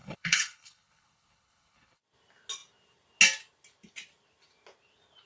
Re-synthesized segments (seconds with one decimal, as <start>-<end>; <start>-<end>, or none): 0.0-2.0